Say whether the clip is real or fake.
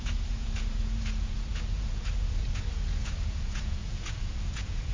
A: fake